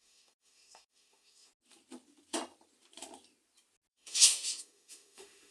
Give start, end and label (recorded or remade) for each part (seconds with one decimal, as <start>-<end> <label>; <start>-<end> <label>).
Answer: 0.0-1.5 remade; 1.5-3.9 recorded; 3.9-5.5 remade